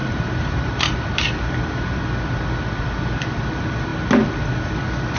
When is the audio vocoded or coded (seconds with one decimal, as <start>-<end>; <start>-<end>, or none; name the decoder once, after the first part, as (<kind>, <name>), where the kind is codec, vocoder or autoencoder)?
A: 0.0-2.0 (vocoder, BigVGAN v2)